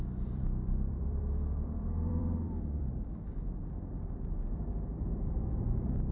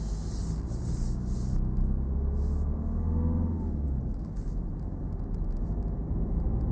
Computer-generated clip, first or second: first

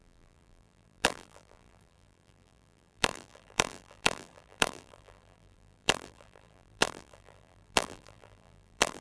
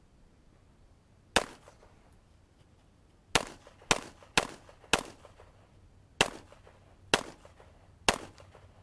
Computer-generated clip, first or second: first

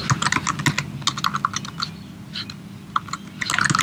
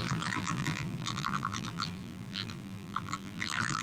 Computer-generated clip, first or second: second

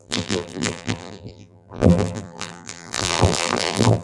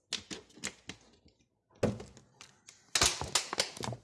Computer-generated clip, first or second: first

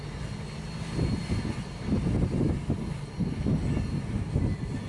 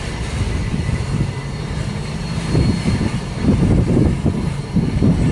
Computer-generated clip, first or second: second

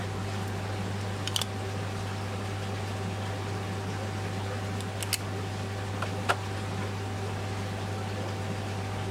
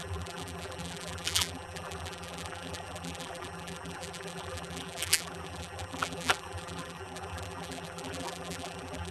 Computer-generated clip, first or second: second